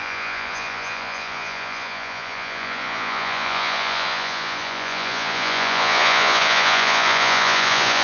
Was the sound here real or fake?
fake